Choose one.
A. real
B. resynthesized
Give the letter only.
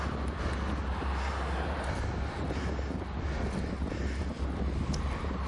A